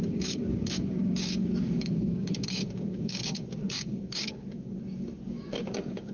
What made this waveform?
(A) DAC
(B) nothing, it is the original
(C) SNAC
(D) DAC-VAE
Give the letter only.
A